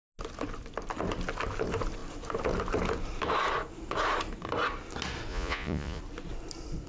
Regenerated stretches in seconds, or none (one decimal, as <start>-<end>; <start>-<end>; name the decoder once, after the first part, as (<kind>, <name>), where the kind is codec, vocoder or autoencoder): 5.3-6.0 (vocoder, Vocos)